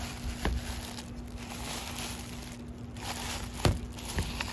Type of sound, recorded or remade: recorded